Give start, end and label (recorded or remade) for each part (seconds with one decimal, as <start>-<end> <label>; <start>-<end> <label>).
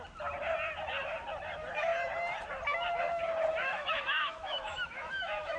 0.0-3.6 recorded; 3.6-5.6 remade